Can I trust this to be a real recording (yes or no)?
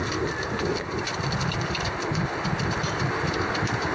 yes